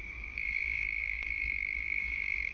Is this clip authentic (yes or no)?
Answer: no